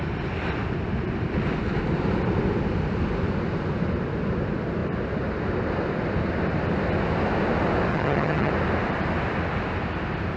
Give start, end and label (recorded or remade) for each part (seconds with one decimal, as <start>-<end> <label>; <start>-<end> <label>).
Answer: 0.0-7.9 recorded; 7.9-8.5 remade; 8.5-10.4 recorded